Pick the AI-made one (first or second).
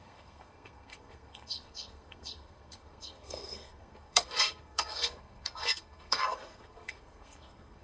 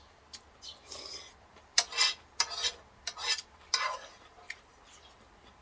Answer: first